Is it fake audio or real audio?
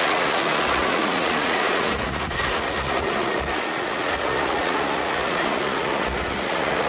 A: fake